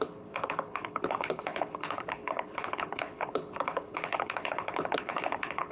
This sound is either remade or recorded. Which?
remade